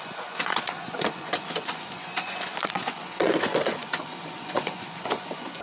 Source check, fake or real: fake